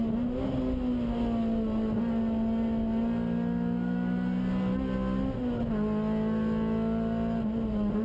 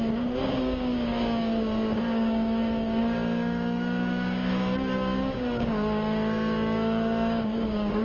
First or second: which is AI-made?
second